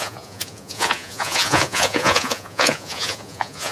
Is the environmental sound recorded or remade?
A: remade